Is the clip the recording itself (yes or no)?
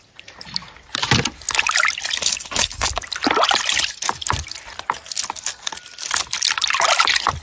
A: yes